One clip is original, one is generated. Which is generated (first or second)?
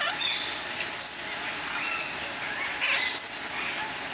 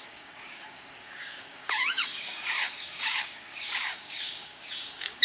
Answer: second